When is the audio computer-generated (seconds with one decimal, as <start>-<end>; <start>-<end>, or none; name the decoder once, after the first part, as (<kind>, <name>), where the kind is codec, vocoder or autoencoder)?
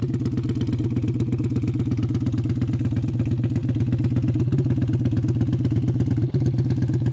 none